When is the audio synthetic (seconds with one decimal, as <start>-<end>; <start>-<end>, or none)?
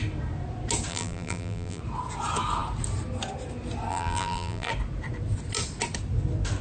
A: 0.9-1.8; 3.9-4.7